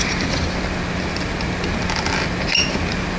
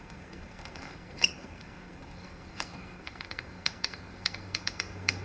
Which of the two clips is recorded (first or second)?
first